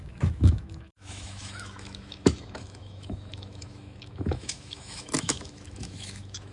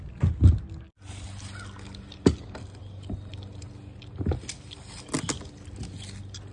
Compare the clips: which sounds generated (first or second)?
first